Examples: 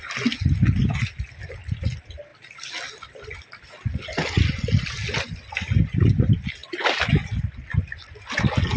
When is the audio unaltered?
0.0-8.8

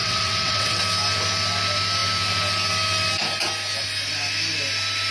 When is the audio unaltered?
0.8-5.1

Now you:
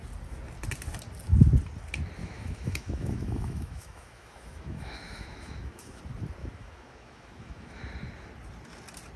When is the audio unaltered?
0.0-2.2; 6.0-6.4; 7.9-9.2

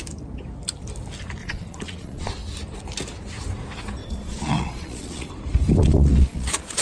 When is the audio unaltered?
0.0-1.4; 2.3-4.0; 5.3-5.8

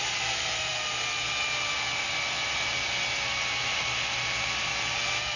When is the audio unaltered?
0.0-5.4

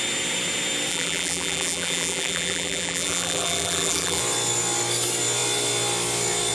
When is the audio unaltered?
0.0-0.9; 4.2-6.5

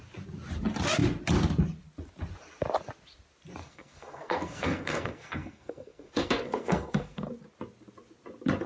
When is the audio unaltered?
0.0-3.6; 7.3-8.7

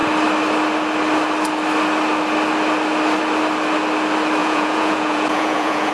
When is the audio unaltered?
0.0-4.4